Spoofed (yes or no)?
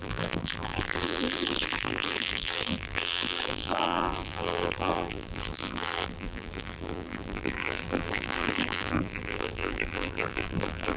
yes